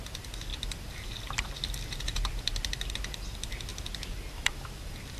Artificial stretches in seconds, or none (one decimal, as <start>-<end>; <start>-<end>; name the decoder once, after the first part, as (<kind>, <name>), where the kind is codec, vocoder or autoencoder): none